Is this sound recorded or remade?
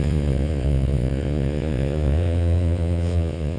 remade